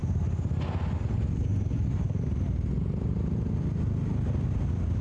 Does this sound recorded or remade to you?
recorded